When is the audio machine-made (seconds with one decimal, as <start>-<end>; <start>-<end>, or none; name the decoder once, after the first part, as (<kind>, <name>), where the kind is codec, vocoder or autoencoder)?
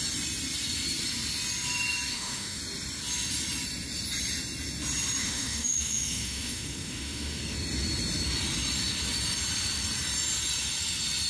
2.1-2.6 (autoencoder, DAC-VAE); 5.2-7.4